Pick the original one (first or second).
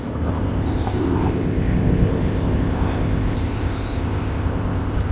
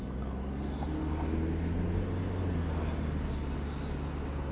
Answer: second